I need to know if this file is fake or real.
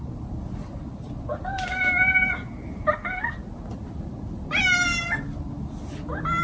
real